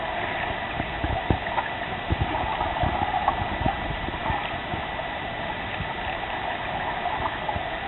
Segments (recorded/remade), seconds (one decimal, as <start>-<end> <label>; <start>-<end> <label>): 0.0-7.9 recorded